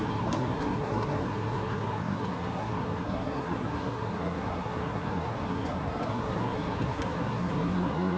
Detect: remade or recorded remade